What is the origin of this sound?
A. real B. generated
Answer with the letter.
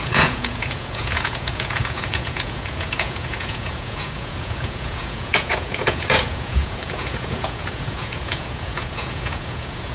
B